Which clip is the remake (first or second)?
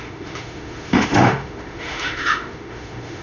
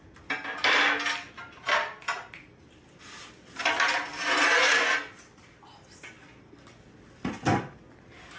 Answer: first